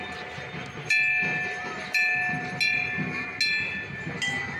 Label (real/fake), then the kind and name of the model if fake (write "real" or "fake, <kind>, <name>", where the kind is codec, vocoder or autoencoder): real